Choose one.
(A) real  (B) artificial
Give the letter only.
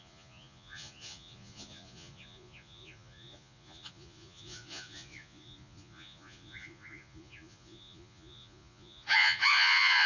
B